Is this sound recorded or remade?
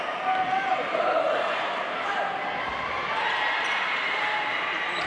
remade